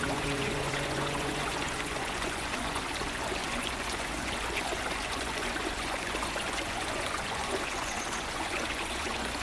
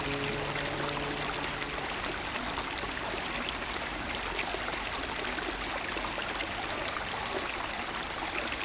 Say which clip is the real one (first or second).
second